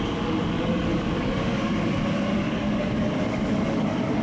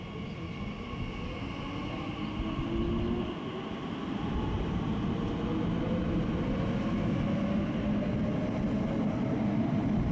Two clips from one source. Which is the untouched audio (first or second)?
second